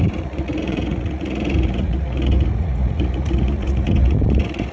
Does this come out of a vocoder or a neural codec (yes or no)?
yes